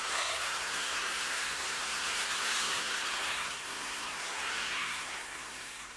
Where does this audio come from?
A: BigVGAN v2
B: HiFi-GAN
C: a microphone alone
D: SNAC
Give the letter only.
D